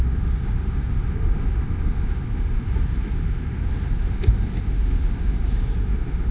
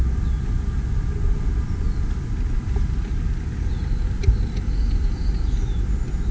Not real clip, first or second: first